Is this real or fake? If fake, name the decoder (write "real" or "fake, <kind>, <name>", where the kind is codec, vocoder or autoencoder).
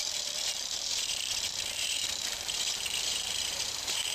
fake, vocoder, BigVGAN v2